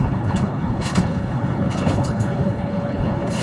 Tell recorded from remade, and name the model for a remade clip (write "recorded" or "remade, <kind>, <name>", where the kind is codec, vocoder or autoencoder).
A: remade, codec, HILCodec